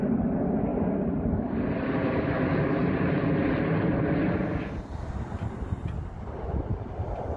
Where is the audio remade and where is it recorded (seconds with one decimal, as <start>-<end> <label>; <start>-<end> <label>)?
0.0-7.4 recorded